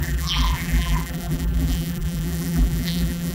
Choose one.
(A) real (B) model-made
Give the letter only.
B